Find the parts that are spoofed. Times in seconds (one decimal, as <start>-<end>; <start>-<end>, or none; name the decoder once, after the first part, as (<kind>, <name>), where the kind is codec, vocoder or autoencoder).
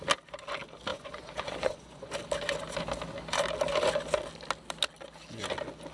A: 0.9-2.1 (vocoder, Vocos)